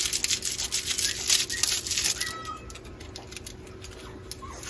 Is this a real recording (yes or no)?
yes